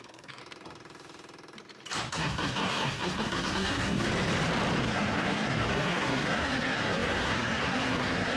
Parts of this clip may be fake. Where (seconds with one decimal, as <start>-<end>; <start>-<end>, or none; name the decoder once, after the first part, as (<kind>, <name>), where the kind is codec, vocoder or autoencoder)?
0.0-0.4 (codec, SNAC); 2.1-4.1; 4.8-8.4